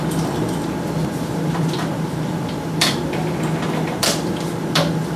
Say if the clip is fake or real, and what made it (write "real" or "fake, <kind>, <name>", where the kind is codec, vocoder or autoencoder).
fake, vocoder, BigVGAN v2